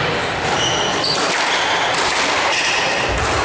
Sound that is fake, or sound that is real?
real